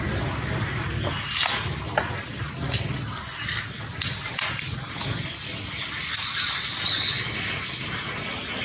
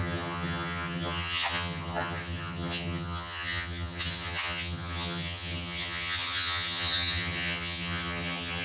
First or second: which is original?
first